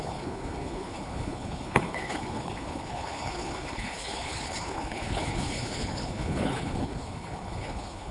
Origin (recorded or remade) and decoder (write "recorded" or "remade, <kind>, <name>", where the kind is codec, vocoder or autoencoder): remade, codec, HILCodec